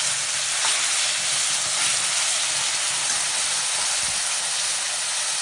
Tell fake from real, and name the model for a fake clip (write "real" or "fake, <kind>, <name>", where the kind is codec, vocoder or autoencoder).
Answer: real